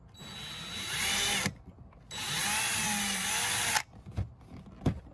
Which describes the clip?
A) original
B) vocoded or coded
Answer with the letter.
A